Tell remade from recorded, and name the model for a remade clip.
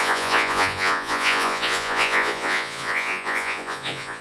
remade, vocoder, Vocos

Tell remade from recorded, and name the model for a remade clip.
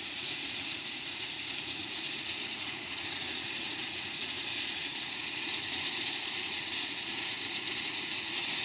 remade, vocoder, Vocos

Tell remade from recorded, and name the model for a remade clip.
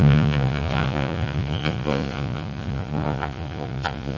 remade, vocoder, Vocos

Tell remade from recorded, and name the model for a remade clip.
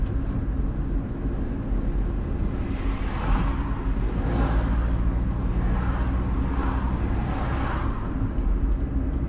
recorded